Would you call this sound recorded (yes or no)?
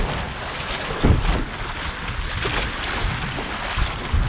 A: yes